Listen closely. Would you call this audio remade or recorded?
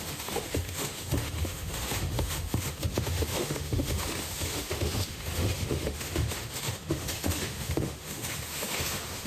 remade